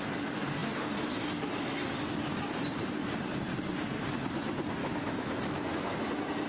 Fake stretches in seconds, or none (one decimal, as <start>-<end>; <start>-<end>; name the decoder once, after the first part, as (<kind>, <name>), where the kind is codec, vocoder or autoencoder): 4.8-6.0 (autoencoder, DAC-VAE)